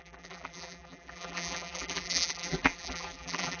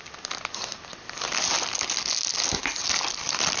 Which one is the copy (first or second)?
first